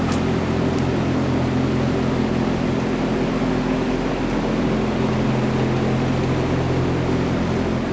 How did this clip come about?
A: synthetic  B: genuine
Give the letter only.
B